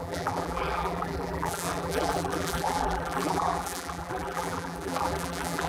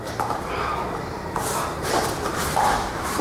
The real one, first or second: second